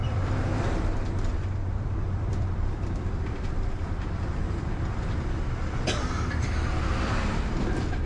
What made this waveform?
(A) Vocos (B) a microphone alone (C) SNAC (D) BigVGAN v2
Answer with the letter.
D